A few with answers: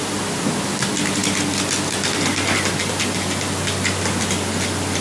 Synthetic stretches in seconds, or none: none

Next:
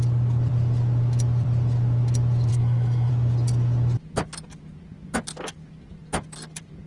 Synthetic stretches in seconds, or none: 2.5-3.1 (codec, SNAC)

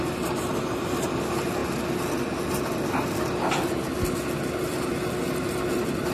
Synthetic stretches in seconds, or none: none

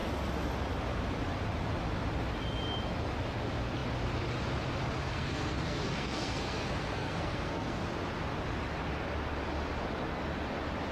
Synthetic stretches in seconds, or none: 5.1-7.8 (codec, SNAC)

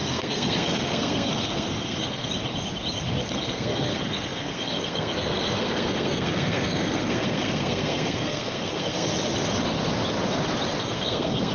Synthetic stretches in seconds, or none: 0.0-2.3 (codec, SNAC); 3.3-9.1; 10.8-11.5

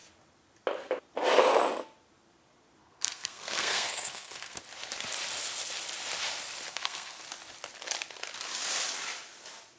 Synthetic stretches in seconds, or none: 2.8-4.6 (codec, SNAC); 6.7-7.2